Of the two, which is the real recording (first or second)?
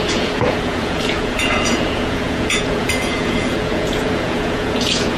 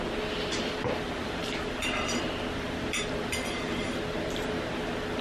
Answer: second